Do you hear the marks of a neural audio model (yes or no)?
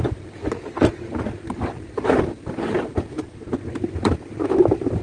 yes